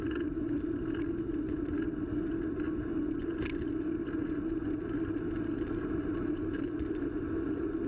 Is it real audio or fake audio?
real